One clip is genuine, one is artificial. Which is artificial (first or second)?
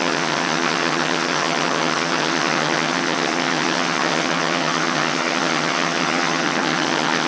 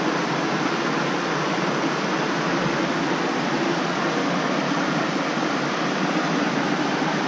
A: first